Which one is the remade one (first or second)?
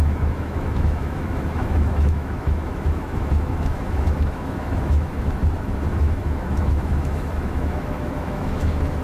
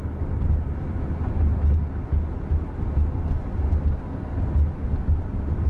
first